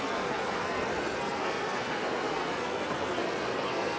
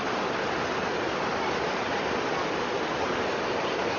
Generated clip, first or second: first